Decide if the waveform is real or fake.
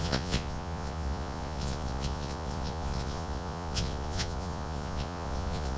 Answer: fake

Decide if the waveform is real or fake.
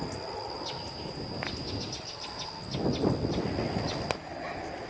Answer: real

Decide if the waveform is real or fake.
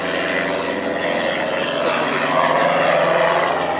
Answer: real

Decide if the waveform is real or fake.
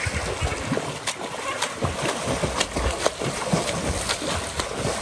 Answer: real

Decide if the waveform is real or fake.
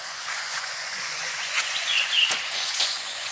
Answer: fake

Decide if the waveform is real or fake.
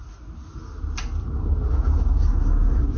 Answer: real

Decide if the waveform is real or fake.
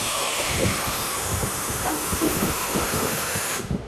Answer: fake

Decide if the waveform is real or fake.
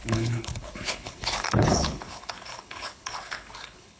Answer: fake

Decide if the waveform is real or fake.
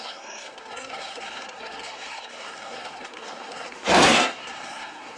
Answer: fake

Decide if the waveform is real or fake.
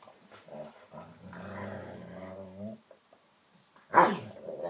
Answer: real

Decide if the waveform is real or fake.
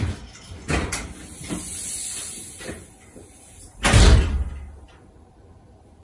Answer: fake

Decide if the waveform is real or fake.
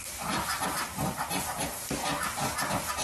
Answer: real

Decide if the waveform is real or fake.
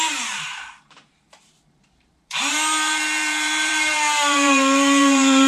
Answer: fake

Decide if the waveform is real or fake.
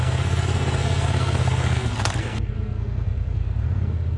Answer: fake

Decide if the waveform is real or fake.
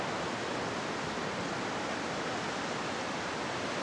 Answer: real